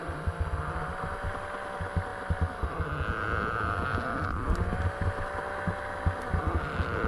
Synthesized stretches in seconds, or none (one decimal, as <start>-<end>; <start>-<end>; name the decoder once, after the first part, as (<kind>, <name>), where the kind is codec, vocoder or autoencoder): none